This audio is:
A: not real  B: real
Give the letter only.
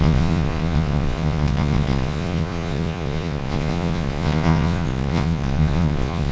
A